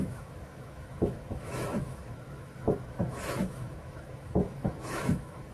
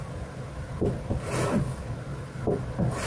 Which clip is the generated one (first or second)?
first